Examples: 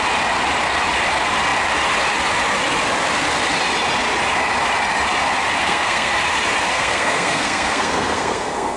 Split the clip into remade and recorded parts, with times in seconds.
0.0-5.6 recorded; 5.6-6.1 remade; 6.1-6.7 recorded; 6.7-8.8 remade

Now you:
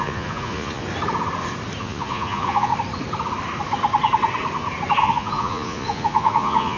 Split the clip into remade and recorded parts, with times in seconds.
0.0-0.8 remade; 0.8-1.8 recorded; 1.8-2.7 remade; 2.7-5.0 recorded; 5.0-6.8 remade

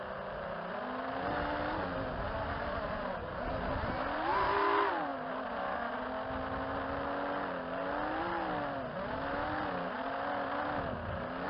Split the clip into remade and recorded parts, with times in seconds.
0.0-11.5 recorded

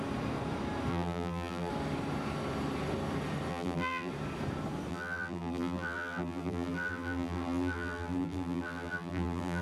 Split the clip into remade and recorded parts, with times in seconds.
0.0-0.9 recorded; 0.9-1.7 remade; 1.7-3.5 recorded; 3.5-4.1 remade; 4.1-4.9 recorded; 4.9-9.6 remade

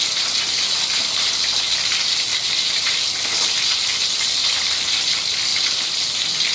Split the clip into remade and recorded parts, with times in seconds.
0.0-2.3 recorded; 2.3-3.3 remade; 3.3-6.5 recorded

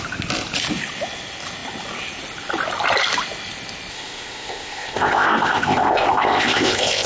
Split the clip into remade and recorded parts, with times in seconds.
0.0-3.9 recorded; 3.9-7.1 remade

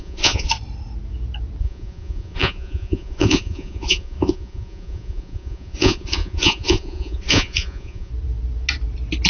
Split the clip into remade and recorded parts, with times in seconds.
0.0-0.5 remade; 0.5-1.6 recorded; 1.6-8.1 remade; 8.1-9.3 recorded

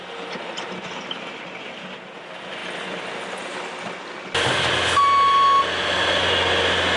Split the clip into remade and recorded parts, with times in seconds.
0.0-7.0 recorded